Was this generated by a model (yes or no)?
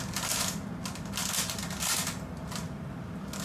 no